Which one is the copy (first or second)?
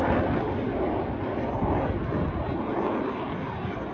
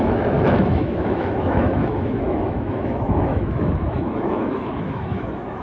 second